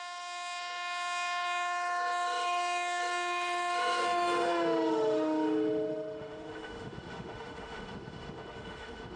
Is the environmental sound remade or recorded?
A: remade